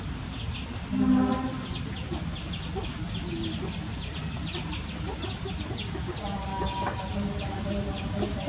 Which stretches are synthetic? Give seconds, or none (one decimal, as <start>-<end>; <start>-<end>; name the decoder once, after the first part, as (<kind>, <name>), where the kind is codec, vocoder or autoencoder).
6.5-7.0 (codec, DAC)